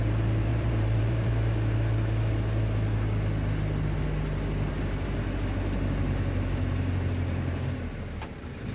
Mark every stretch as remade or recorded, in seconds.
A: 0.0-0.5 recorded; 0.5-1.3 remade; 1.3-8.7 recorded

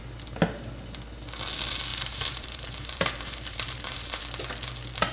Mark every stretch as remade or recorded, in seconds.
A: 0.0-1.9 recorded; 1.9-4.2 remade; 4.2-5.1 recorded

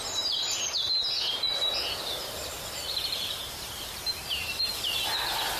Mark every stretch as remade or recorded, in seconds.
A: 0.0-3.4 recorded; 3.4-4.7 remade; 4.7-5.6 recorded

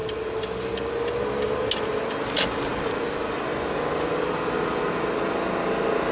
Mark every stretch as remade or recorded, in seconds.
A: 0.0-2.7 recorded; 2.7-3.7 remade; 3.7-6.1 recorded

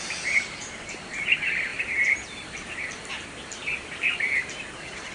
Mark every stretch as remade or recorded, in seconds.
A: 0.0-1.7 recorded; 1.7-5.1 remade